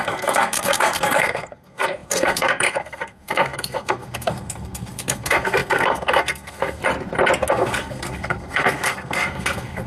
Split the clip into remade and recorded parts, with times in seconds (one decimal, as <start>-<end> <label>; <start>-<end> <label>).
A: 0.0-6.8 remade; 6.8-7.5 recorded; 7.5-9.9 remade

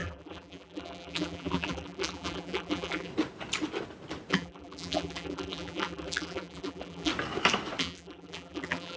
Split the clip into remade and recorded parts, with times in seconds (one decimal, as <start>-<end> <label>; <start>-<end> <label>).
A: 0.0-3.1 remade; 3.1-4.3 recorded; 4.3-7.1 remade; 7.1-7.8 recorded; 7.8-9.0 remade